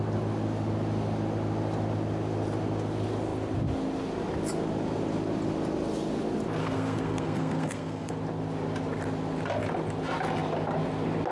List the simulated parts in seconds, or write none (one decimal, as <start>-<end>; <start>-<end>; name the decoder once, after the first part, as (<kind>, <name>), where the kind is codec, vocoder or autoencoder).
6.6-8.1 (codec, SNAC)

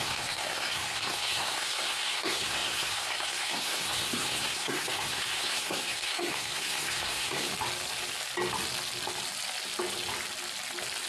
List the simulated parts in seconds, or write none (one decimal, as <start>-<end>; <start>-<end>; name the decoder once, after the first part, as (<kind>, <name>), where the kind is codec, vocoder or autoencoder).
0.0-7.5 (codec, SNAC)